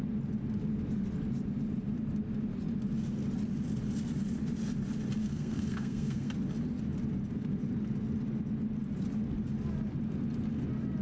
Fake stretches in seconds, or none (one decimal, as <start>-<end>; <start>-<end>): 5.2-6.3